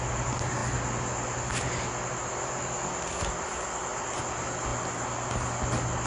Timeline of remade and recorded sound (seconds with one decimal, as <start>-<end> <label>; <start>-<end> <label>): 0.0-6.1 recorded